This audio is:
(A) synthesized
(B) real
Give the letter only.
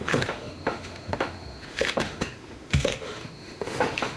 A